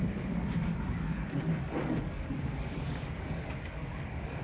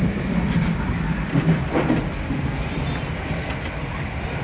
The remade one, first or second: first